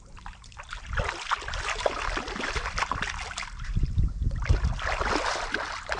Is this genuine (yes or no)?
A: yes